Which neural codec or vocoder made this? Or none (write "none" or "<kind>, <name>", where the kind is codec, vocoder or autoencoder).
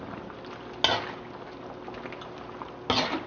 none